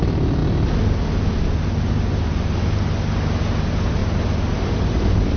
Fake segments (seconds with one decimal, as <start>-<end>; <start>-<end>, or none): 0.0-0.4; 3.4-4.0; 4.7-5.4